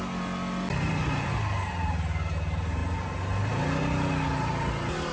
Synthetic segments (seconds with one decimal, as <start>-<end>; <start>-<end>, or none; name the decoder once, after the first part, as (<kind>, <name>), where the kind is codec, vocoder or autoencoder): none